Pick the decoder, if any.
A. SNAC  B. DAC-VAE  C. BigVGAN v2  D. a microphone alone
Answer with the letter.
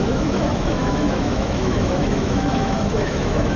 B